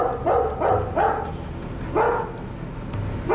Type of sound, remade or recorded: recorded